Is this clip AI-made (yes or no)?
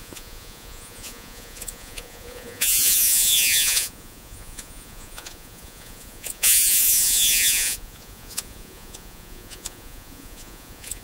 yes